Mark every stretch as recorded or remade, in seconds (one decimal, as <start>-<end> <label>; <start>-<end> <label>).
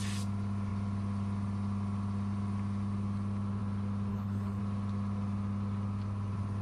0.0-4.1 recorded; 4.1-4.6 remade; 4.6-6.6 recorded